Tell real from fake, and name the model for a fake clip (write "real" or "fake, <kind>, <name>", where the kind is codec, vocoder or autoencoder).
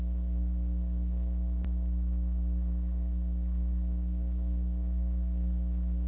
fake, codec, SNAC